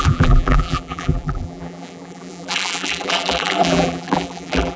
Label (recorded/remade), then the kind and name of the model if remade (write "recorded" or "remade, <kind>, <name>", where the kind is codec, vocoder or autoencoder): remade, vocoder, BigVGAN v2